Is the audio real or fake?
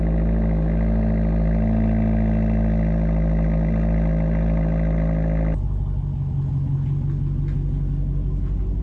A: real